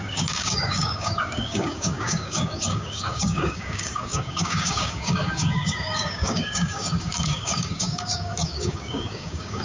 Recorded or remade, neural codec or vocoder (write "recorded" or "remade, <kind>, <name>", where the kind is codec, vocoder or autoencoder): remade, codec, DAC